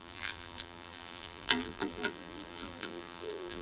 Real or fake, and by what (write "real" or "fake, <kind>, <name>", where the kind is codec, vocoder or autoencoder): fake, vocoder, BigVGAN v2